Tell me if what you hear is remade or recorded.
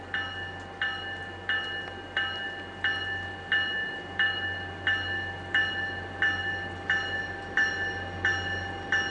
recorded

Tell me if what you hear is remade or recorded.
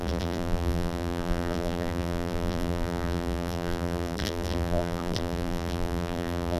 remade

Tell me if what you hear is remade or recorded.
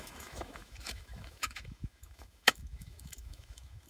remade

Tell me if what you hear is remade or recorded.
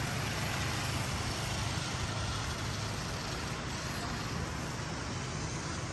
recorded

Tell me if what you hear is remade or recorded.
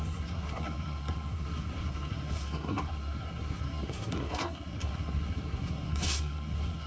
remade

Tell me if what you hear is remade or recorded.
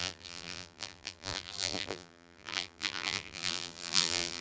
remade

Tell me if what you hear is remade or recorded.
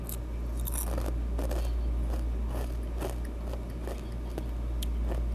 recorded